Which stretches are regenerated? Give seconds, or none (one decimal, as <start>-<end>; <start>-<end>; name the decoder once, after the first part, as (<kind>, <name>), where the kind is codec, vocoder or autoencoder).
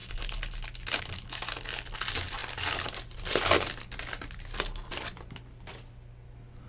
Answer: none